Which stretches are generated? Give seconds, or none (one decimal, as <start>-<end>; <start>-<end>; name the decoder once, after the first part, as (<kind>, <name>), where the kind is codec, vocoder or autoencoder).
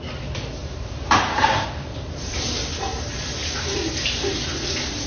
0.6-2.7 (vocoder, BigVGAN v2); 3.4-3.9